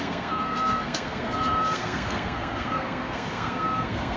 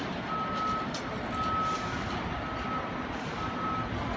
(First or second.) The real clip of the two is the second